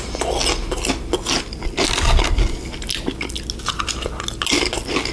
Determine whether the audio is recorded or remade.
recorded